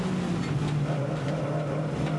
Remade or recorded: recorded